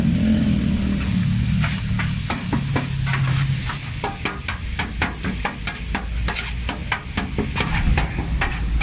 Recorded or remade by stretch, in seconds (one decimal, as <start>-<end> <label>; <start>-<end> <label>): 0.0-8.8 recorded